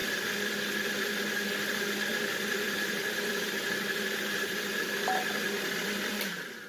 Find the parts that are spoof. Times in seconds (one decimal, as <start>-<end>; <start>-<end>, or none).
2.1-6.1